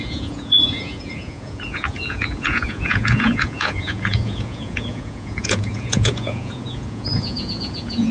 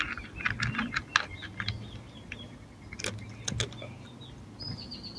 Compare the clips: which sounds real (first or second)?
second